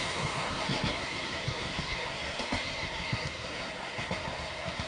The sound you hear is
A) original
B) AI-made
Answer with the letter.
B